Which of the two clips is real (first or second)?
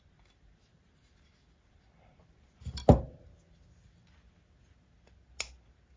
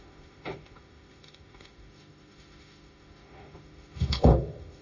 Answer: first